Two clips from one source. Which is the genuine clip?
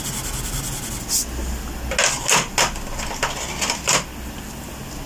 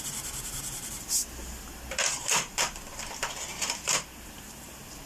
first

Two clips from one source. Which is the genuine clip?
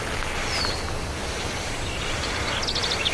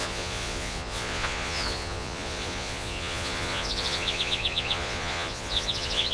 first